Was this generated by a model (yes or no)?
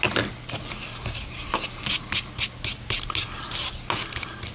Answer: no